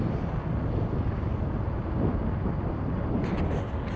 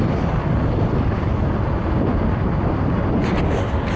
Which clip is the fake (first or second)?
second